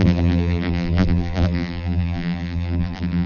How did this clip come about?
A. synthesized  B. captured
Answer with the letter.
A